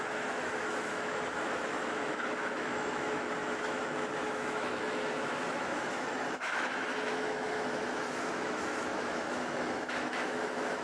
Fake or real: fake